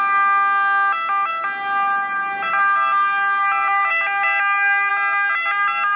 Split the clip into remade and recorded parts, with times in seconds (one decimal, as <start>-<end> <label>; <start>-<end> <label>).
0.0-6.0 recorded